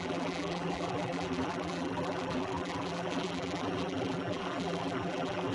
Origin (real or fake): fake